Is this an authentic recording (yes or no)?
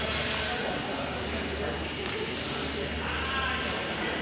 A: yes